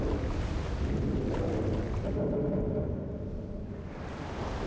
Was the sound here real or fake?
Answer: real